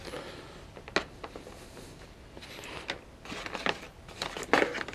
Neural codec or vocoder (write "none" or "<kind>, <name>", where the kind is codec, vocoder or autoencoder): none